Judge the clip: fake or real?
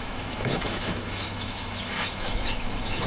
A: fake